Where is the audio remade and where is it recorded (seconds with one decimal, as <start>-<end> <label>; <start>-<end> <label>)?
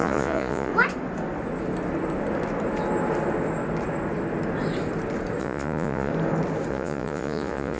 0.0-0.7 remade; 0.7-5.4 recorded; 5.4-6.1 remade; 6.1-6.7 recorded; 6.7-7.8 remade